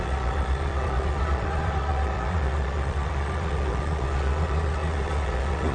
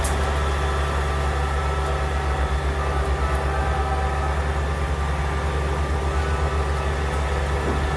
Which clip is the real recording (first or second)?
second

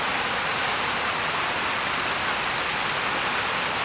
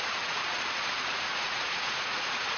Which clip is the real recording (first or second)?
first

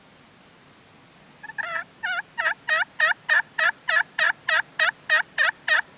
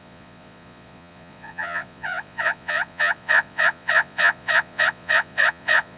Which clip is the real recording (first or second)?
first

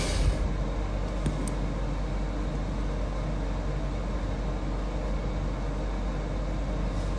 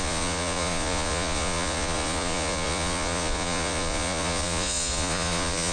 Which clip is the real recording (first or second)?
first